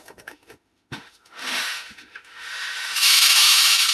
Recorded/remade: remade